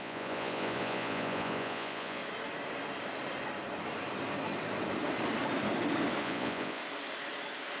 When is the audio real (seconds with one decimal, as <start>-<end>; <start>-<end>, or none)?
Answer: 2.2-6.2; 6.8-7.8